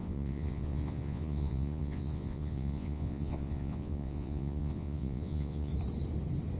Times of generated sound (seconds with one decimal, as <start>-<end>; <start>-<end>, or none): 0.0-5.7